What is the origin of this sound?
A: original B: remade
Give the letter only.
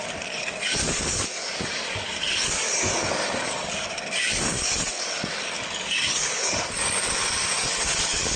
B